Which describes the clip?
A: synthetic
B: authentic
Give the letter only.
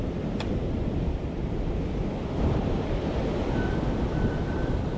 A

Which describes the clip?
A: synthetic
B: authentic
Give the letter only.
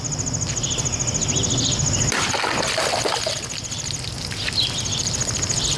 B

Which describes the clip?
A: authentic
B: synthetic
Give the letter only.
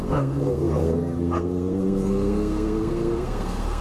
B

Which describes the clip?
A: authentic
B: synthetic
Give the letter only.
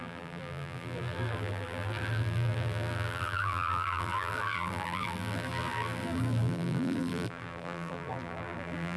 B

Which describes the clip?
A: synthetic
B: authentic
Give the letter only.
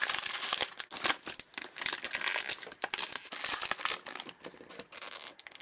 B